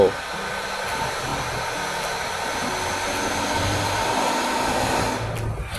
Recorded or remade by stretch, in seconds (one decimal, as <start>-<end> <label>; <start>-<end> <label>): 0.0-5.8 recorded